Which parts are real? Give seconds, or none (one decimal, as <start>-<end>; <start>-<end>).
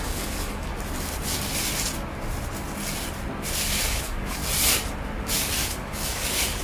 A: 0.7-4.0; 4.4-5.3